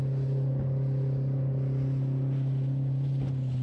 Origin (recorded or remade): recorded